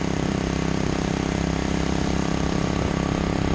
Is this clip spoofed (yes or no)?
no